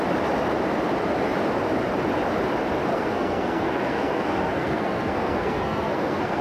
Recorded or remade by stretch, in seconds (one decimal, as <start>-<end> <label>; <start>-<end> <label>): 0.0-2.9 recorded; 2.9-6.4 remade